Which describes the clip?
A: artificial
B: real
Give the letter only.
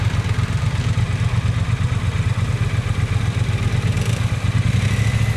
B